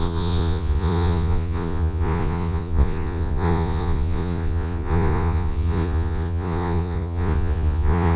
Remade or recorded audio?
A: remade